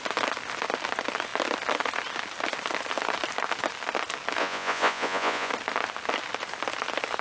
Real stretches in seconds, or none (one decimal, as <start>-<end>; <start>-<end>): 0.0-4.4; 5.5-7.2

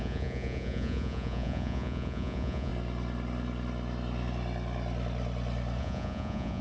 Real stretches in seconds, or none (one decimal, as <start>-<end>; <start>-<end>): 2.7-5.8

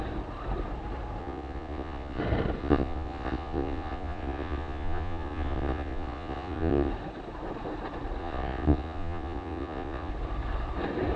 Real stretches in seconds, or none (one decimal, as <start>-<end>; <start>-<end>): 0.0-1.2; 2.2-2.6; 6.9-8.2; 10.1-11.2

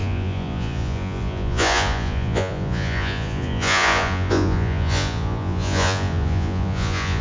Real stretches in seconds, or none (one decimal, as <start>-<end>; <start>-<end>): none

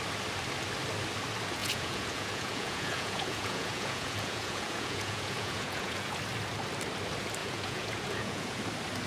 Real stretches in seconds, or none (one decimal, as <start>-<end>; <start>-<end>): 0.0-1.6; 6.2-7.4; 8.6-9.1